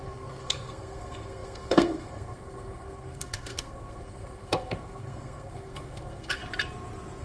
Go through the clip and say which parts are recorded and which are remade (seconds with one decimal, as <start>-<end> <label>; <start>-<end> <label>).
0.0-6.4 remade; 6.4-7.2 recorded